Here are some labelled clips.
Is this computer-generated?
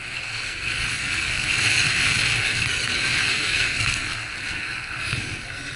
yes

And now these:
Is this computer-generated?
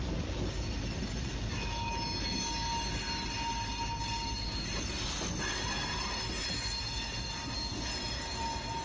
no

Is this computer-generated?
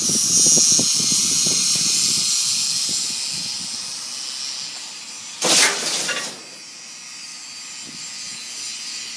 no